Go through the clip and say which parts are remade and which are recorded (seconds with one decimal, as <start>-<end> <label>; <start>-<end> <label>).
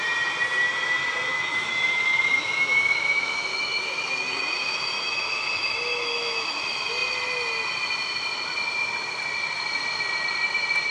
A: 0.0-1.3 recorded; 1.3-6.6 remade; 6.6-10.9 recorded